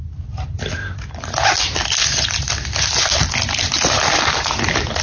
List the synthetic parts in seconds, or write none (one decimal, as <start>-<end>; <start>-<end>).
none